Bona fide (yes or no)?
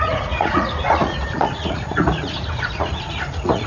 no